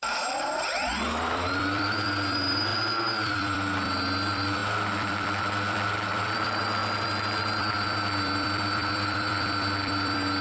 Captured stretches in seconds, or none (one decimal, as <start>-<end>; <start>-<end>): none